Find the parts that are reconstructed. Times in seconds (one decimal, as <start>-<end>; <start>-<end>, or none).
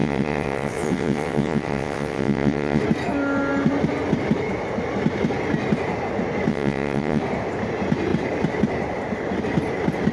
0.0-2.8; 6.5-7.2